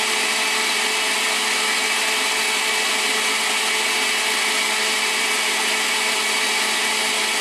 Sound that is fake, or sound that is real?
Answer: real